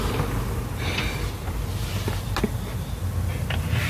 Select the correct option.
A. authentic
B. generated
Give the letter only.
A